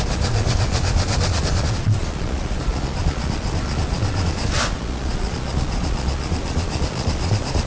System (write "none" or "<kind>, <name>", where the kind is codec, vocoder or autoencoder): vocoder, Vocos